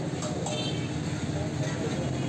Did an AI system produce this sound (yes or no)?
no